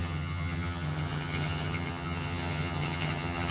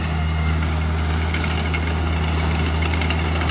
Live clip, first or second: second